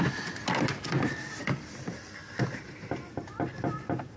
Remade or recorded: recorded